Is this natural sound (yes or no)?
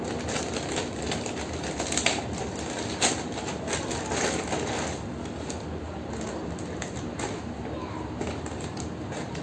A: yes